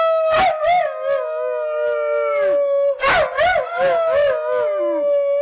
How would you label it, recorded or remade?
recorded